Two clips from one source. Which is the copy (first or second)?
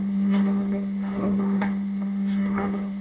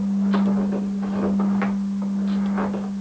first